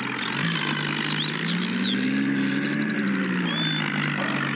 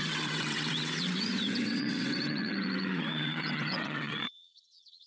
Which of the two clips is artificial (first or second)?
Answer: second